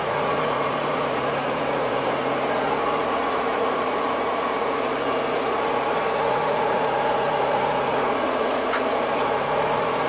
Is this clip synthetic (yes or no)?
yes